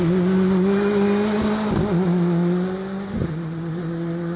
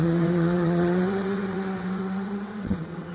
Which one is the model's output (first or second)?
second